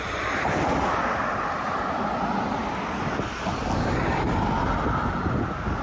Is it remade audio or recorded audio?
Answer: recorded